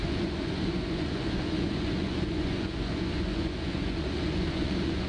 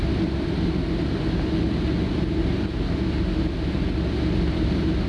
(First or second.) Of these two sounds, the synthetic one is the first